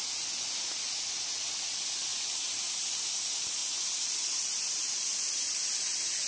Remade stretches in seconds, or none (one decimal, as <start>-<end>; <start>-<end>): 2.1-3.1